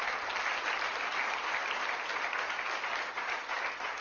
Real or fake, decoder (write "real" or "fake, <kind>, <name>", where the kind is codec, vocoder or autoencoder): real